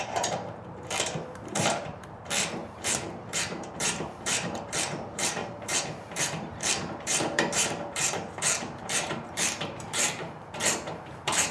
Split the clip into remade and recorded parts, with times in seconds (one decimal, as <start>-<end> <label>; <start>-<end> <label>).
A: 0.0-11.5 remade